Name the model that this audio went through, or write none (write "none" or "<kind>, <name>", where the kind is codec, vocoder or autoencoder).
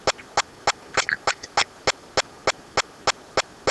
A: none